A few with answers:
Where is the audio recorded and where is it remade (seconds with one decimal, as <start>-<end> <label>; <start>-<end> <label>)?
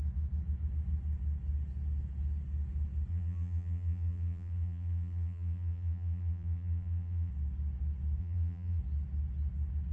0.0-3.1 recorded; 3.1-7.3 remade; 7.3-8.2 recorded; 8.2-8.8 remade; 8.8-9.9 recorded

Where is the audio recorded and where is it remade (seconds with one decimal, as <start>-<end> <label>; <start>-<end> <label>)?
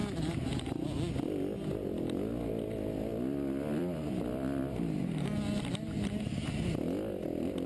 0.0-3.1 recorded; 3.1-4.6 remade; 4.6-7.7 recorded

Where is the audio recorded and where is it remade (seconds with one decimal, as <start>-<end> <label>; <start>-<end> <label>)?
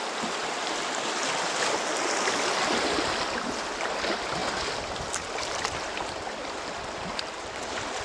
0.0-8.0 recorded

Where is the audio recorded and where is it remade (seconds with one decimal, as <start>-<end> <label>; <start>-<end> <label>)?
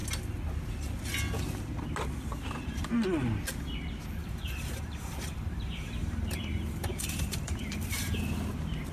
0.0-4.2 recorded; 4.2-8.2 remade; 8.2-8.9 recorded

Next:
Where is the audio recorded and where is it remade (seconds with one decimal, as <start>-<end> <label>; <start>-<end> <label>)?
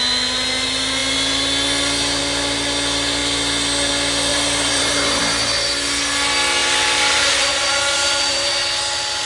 0.0-4.3 recorded; 4.3-5.2 remade; 5.2-6.6 recorded; 6.6-8.5 remade; 8.5-9.3 recorded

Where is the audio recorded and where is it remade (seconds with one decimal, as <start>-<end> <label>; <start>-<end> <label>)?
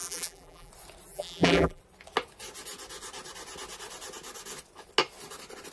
0.0-0.7 remade; 0.7-1.1 recorded; 1.1-1.8 remade; 1.8-5.7 recorded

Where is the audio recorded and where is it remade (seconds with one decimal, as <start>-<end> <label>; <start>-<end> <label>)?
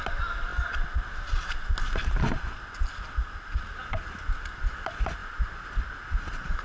0.0-6.6 recorded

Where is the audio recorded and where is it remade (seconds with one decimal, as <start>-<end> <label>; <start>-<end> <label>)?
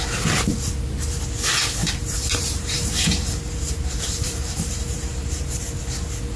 0.0-1.8 recorded; 1.8-5.6 remade; 5.6-6.4 recorded